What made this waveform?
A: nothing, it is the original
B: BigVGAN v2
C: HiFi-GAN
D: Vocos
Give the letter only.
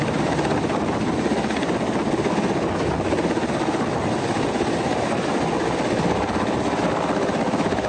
A